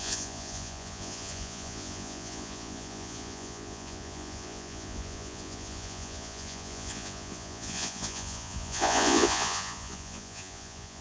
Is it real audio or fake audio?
fake